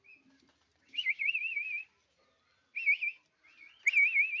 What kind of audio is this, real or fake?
real